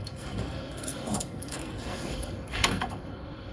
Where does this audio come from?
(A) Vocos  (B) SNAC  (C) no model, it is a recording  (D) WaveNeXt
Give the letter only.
B